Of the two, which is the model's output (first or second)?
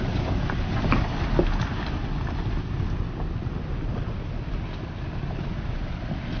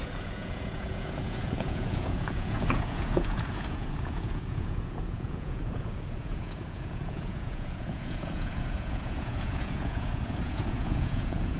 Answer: second